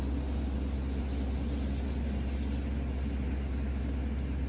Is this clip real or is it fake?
real